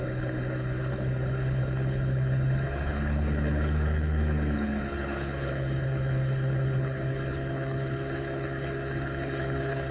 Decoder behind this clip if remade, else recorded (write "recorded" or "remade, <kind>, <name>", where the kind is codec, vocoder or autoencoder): remade, codec, HILCodec